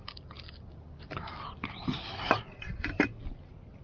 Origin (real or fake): real